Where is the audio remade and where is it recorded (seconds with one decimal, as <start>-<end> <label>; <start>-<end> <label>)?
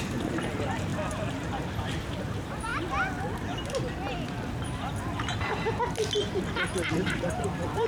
0.0-0.9 remade; 0.9-1.7 recorded; 1.7-2.7 remade; 2.7-6.9 recorded; 6.9-7.9 remade